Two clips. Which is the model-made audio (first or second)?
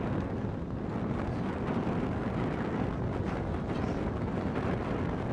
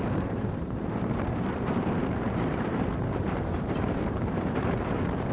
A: second